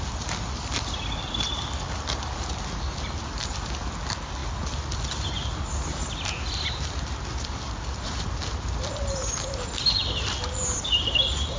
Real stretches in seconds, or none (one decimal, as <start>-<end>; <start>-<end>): 0.0-11.6